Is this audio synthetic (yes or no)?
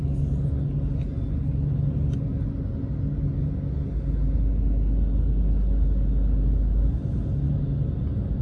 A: no